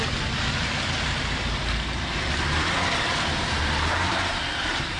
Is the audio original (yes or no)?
no